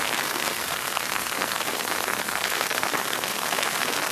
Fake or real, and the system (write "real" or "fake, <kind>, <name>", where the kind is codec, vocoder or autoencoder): fake, codec, SNAC